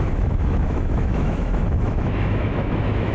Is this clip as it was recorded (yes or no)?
no